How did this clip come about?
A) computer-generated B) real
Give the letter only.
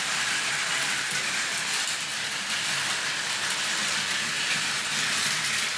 A